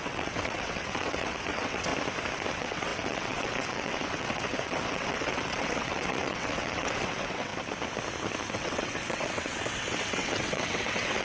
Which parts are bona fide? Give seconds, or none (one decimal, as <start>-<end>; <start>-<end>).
1.9-2.5; 7.5-8.5